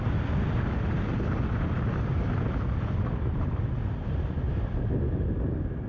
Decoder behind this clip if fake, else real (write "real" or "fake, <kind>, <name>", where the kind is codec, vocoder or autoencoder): real